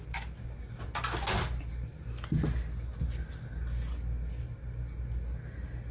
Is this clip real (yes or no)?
yes